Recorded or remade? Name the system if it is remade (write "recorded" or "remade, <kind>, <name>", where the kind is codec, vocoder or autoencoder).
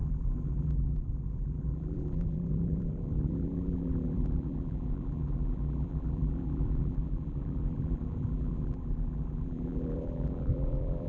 remade, vocoder, BigVGAN v2